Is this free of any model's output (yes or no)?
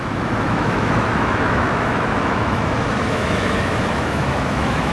no